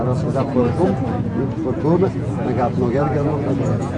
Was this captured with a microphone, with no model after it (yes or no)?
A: no